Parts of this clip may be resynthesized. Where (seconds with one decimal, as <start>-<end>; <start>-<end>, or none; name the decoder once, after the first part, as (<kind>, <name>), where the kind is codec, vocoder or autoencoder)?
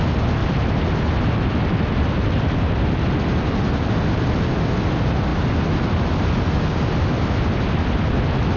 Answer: none